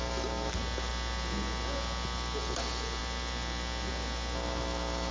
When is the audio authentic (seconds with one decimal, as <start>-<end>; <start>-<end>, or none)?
0.0-5.1